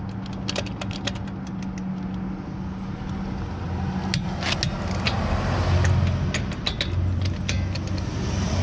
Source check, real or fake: real